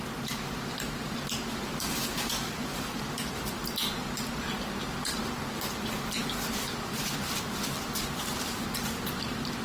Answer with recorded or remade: remade